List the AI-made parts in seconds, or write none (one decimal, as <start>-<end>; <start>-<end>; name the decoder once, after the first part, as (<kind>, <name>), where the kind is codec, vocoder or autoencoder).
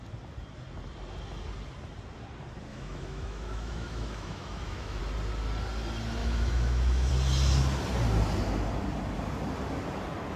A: 2.7-5.0 (autoencoder, DAC-VAE); 6.2-7.1